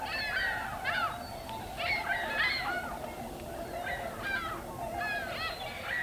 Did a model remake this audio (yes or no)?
no